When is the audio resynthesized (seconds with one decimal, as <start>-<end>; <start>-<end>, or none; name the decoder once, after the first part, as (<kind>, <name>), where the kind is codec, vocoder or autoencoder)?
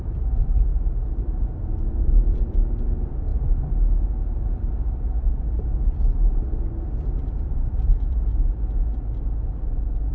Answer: 0.0-0.7 (vocoder, BigVGAN v2); 1.9-8.3